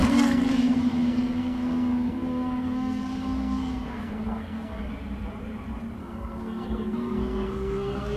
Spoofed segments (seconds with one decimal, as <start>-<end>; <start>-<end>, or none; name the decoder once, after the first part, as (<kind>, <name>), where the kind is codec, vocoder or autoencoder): 0.0-4.9 (codec, SNAC); 6.0-8.2